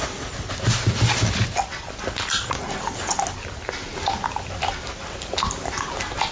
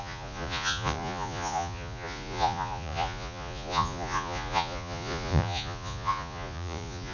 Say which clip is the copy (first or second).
second